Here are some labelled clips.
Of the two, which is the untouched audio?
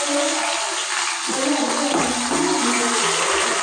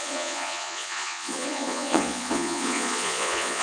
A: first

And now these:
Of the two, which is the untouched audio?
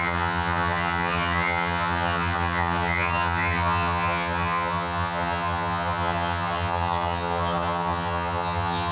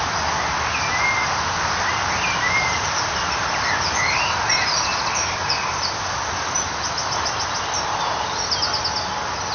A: second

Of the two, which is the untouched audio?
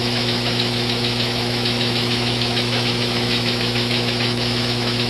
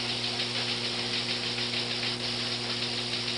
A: second